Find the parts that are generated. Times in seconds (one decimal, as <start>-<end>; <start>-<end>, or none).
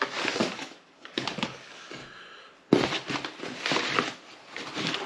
0.0-2.0